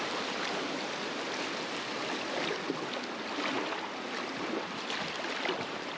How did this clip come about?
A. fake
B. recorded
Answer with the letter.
B